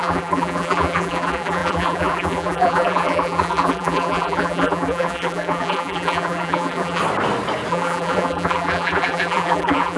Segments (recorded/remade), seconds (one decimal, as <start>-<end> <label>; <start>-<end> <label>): 0.0-7.0 remade; 7.0-7.7 recorded; 7.7-10.0 remade